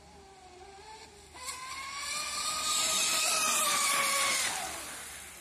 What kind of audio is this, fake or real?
real